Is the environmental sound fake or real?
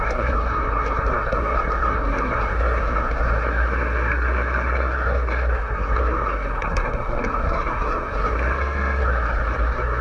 fake